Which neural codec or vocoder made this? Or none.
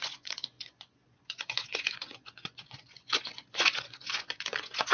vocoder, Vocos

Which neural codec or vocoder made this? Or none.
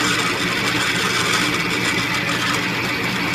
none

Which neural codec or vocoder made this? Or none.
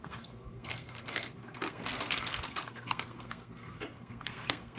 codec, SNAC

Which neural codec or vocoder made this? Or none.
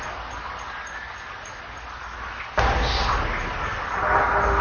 none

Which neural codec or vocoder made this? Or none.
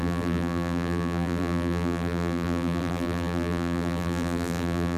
vocoder, BigVGAN v2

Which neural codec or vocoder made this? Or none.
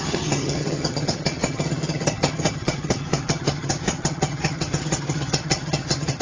vocoder, HiFi-GAN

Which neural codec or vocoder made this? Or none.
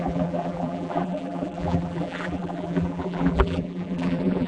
vocoder, BigVGAN v2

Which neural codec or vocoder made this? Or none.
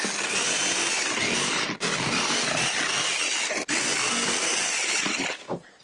none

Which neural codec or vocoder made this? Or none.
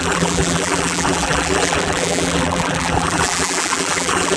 vocoder, BigVGAN v2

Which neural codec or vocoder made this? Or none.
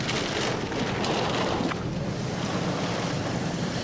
none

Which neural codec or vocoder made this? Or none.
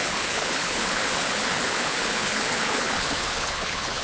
codec, HILCodec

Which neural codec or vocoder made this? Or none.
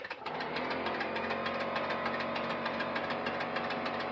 none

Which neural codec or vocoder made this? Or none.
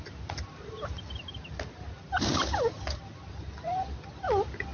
none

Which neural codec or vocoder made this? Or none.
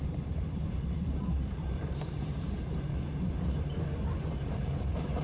vocoder, BigVGAN v2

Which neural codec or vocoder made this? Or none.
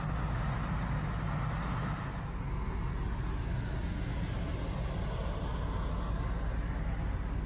none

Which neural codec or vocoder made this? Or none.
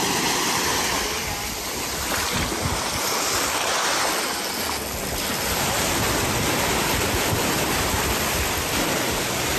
none